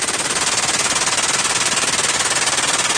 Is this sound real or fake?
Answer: real